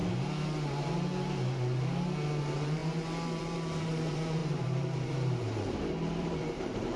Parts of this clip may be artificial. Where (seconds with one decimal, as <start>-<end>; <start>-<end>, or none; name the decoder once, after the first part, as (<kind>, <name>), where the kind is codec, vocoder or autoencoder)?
2.4-2.8 (vocoder, BigVGAN v2); 3.4-7.0